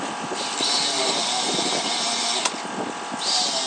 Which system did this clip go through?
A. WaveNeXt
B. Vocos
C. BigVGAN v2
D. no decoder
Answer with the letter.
D